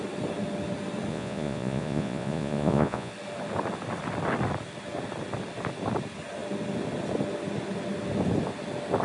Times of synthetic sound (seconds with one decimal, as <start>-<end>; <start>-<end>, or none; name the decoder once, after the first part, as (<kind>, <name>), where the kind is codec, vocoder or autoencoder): 1.1-3.1 (vocoder, Vocos)